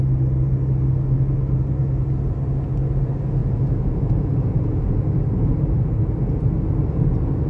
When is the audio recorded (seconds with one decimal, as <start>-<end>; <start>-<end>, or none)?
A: 0.0-3.4; 5.0-7.5